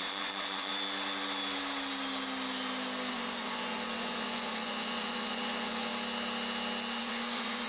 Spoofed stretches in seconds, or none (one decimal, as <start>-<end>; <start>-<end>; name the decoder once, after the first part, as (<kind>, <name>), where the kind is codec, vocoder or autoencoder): 0.0-0.7 (vocoder, Vocos); 3.1-5.9; 7.0-7.7